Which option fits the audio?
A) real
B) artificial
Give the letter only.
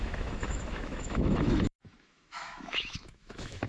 B